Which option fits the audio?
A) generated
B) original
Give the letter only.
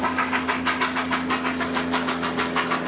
A